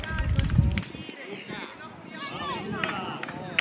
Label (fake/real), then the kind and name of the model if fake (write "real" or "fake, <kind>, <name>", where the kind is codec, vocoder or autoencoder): real